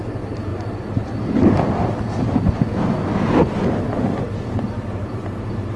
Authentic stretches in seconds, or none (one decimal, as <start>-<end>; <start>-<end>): 0.5-4.0